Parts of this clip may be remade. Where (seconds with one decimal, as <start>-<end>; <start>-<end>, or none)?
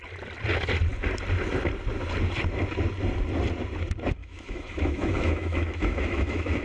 4.2-6.6